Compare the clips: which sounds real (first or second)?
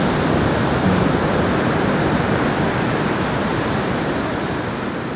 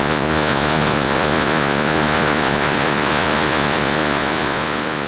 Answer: first